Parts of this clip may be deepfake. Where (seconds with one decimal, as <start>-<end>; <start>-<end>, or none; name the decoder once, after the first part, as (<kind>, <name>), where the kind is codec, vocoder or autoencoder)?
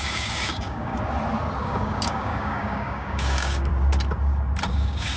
0.0-0.9 (codec, DAC); 1.6-3.7; 4.7-5.2